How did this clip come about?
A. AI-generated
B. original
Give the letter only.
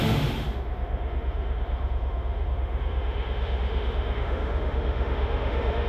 A